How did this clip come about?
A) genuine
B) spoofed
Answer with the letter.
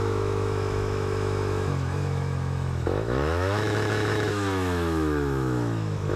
B